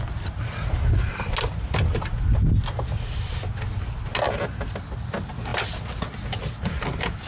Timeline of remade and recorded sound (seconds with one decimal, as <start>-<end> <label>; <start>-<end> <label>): 0.0-7.3 recorded